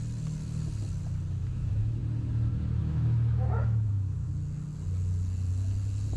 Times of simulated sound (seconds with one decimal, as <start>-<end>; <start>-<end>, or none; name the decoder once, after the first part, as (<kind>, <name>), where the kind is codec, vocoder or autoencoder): 1.4-2.0 (autoencoder, DAC-VAE); 2.8-4.3